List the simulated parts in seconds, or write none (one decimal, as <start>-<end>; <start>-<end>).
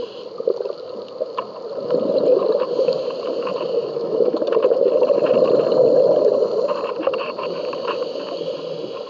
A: 3.8-4.4